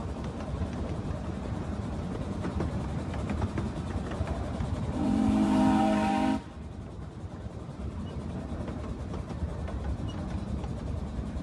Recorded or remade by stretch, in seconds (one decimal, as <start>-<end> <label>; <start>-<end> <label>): 0.0-9.5 remade; 9.5-10.8 recorded; 10.8-11.4 remade